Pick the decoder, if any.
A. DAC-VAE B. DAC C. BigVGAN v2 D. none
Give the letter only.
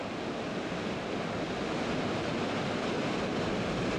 D